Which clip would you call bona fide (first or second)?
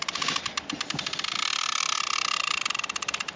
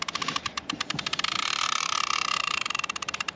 first